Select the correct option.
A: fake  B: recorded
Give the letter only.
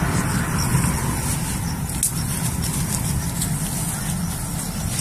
B